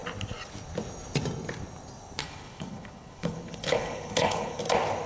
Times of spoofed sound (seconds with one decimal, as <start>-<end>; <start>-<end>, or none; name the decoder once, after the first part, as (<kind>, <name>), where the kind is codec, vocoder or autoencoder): 2.2-4.6 (codec, HILCodec)